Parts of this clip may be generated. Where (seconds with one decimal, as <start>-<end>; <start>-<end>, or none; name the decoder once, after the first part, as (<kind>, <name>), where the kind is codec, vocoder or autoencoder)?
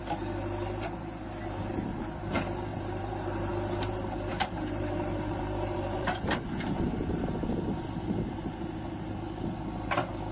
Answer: 2.7-3.5 (vocoder, BigVGAN v2); 4.3-7.2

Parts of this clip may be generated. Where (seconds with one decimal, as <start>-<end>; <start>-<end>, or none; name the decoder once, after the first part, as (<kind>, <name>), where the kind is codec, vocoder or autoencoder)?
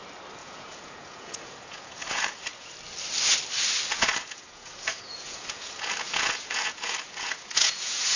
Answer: 0.4-2.7 (vocoder, Vocos); 4.0-8.2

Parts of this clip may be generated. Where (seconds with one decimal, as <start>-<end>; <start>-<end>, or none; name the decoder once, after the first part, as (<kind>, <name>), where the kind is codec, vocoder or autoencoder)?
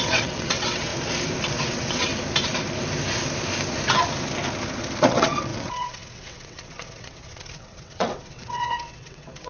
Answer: 0.0-0.9 (vocoder, WaveNeXt); 1.6-2.1; 5.0-9.5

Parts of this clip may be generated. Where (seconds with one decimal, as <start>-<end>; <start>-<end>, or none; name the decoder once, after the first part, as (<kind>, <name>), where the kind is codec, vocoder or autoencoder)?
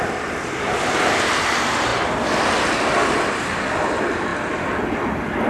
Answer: none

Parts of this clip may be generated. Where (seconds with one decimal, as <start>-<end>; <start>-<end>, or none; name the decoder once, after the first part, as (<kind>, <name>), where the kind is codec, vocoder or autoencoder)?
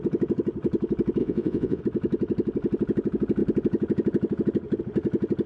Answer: 1.2-1.8 (vocoder, Vocos)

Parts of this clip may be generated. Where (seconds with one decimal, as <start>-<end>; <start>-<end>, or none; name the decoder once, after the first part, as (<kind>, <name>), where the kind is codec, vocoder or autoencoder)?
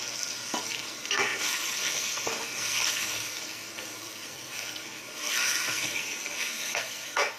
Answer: 0.0-7.4 (codec, SNAC)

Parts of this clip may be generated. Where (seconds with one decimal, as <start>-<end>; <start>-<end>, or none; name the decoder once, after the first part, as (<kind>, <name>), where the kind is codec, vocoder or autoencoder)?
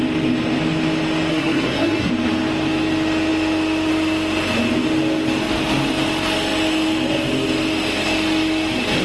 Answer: 1.3-2.1 (codec, SNAC)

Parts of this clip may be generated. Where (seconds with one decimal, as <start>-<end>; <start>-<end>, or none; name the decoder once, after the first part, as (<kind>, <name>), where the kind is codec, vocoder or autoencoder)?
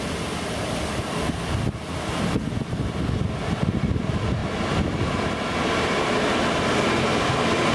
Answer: none